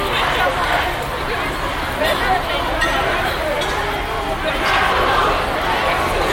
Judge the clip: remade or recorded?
recorded